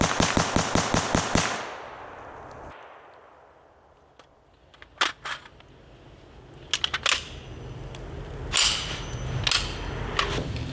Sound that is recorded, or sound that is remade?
recorded